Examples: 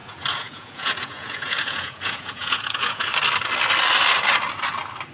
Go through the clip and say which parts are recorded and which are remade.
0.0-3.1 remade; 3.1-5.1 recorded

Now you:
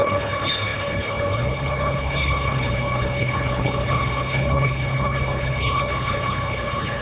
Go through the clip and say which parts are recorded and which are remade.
0.0-7.0 remade

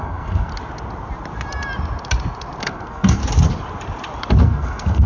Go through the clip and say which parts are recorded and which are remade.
0.0-0.5 remade; 0.5-2.6 recorded; 2.6-3.2 remade; 3.2-4.4 recorded; 4.4-5.1 remade

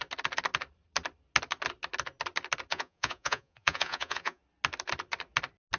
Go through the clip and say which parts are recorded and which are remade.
0.0-2.7 recorded; 2.7-4.4 remade; 4.4-5.8 recorded

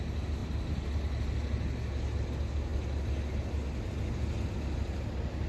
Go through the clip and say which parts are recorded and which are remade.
0.0-5.5 recorded

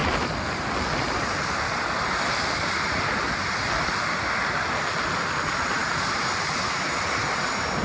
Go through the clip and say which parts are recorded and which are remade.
0.0-4.6 remade; 4.6-7.8 recorded

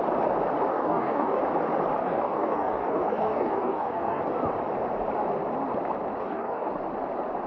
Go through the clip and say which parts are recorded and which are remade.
0.0-0.7 recorded; 0.7-1.4 remade; 1.4-2.0 recorded; 2.0-4.2 remade; 4.2-6.2 recorded; 6.2-6.7 remade; 6.7-7.5 recorded